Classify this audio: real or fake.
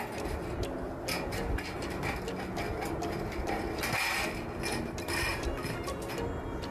real